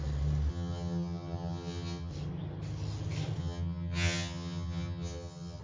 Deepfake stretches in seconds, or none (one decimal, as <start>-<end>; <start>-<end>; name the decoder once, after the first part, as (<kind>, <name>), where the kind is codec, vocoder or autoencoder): 0.5-2.1 (vocoder, HiFi-GAN); 3.4-5.6